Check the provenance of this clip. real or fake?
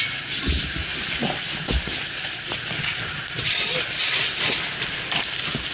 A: real